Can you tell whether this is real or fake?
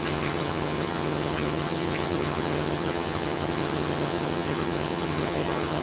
fake